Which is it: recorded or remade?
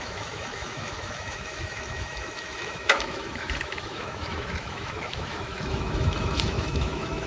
remade